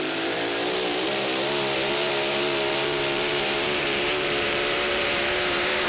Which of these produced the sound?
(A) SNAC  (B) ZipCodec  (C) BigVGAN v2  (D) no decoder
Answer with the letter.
C